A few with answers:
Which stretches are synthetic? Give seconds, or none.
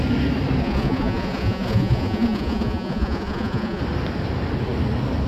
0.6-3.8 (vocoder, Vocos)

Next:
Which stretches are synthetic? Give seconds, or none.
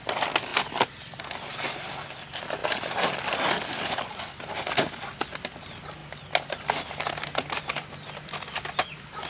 0.5-1.2 (vocoder, BigVGAN v2); 2.6-4.5; 6.0-7.0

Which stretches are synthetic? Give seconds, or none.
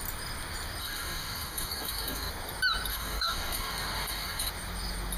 0.8-2.3 (codec, DAC); 2.9-4.5